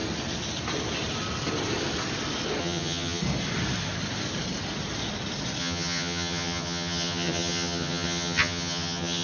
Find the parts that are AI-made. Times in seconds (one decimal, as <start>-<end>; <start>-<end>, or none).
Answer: 2.6-3.2; 5.6-9.2